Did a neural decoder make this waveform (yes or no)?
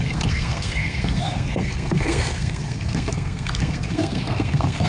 yes